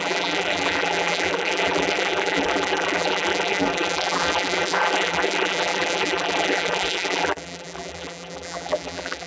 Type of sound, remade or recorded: remade